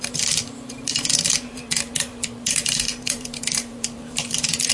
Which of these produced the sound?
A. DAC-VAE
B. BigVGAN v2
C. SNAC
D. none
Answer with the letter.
B